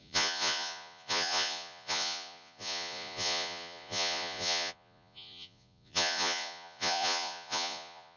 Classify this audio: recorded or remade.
remade